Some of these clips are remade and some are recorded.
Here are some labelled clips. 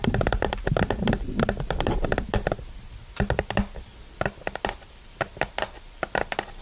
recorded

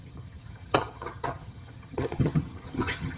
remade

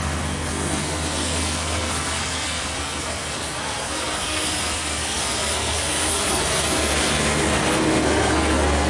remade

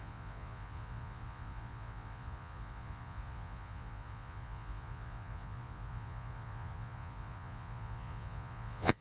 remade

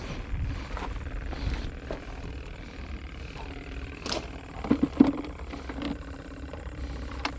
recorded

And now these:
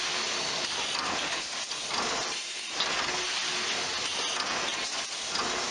recorded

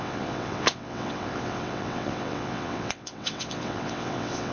remade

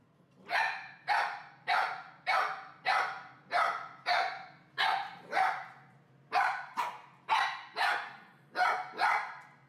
recorded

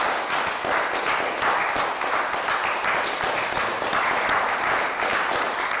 recorded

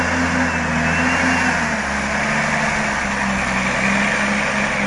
recorded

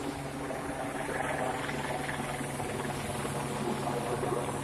recorded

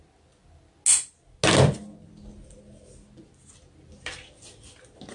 recorded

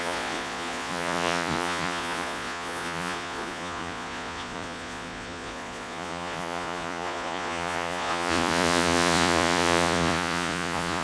remade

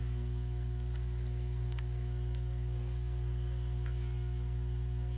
remade